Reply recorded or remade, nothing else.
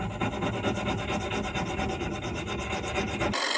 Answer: recorded